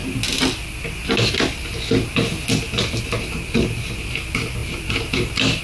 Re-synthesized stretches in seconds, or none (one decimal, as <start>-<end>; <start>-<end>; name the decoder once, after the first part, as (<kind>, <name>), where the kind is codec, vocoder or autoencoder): none